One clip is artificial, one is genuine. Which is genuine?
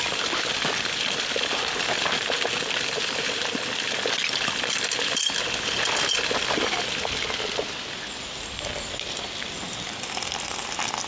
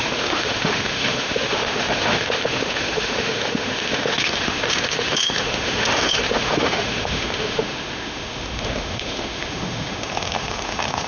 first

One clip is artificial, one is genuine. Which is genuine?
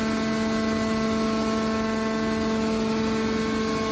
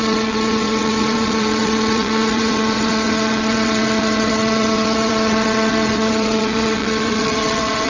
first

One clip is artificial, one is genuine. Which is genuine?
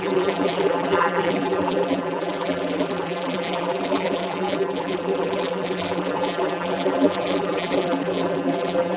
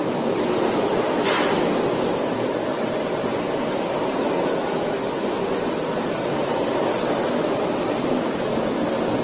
second